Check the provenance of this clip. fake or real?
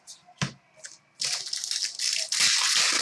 real